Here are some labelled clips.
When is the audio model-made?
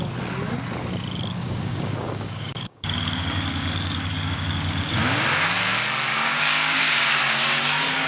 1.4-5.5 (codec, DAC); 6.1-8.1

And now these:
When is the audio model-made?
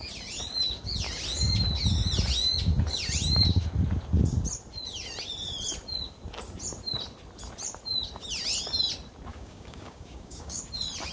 9.3-10.6 (codec, DAC)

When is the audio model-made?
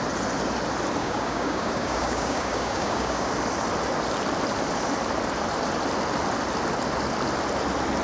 1.0-3.3 (codec, DAC)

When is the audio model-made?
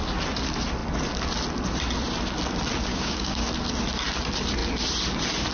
2.9-3.4 (codec, DAC)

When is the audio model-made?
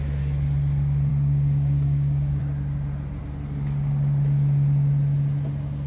1.1-2.4 (codec, DAC)